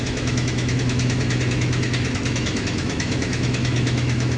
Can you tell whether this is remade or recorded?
remade